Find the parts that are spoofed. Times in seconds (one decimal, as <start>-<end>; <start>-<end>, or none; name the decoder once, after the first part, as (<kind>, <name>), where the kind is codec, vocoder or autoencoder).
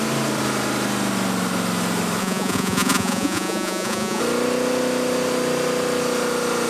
2.2-4.2 (vocoder, Vocos)